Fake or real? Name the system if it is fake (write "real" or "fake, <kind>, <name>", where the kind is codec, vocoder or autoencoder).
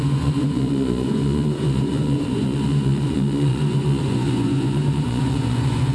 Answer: fake, vocoder, Vocos